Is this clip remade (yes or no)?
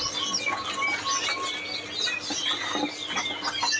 no